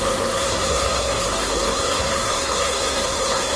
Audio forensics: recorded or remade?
remade